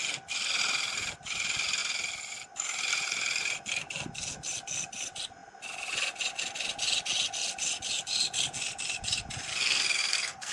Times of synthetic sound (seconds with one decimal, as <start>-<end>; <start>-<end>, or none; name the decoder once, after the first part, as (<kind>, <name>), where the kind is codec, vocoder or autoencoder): 9.5-10.5 (codec, SNAC)